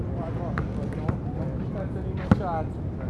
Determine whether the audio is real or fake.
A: real